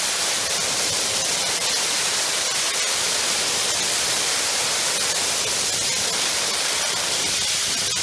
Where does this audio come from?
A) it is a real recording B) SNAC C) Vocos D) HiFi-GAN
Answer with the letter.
A